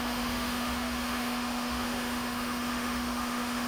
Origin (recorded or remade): remade